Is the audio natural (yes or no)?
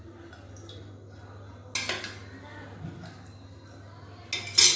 yes